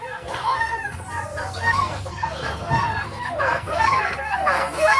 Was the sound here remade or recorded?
remade